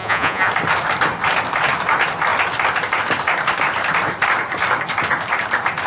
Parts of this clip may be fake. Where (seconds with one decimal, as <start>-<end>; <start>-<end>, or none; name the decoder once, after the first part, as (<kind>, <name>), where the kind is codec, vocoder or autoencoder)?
0.0-0.5 (vocoder, Vocos)